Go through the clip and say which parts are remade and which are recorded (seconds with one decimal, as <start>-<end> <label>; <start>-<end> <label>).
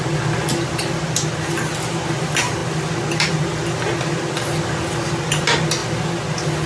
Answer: 0.0-6.7 recorded